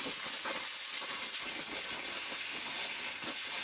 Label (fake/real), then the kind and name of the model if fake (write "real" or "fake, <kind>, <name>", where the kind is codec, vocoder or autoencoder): real